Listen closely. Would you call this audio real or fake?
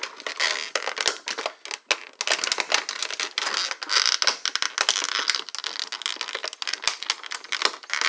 real